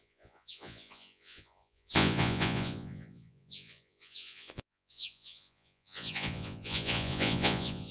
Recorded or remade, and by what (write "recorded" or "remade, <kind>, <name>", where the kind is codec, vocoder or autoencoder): remade, vocoder, Vocos